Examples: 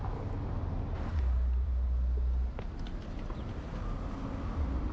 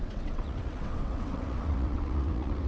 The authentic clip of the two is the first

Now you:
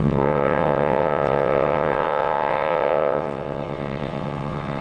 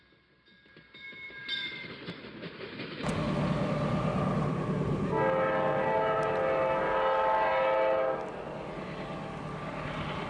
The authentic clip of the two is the second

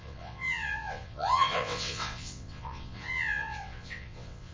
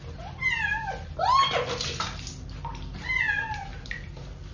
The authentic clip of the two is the second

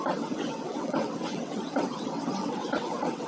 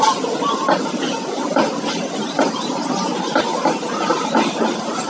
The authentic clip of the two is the second